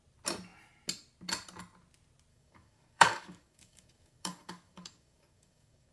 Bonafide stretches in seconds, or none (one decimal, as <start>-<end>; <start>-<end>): 0.0-2.3